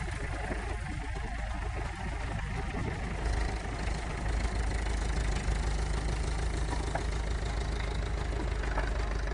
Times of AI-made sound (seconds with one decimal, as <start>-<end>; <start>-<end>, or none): none